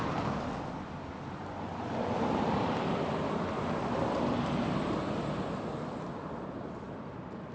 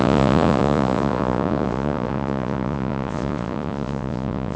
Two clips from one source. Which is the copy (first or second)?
second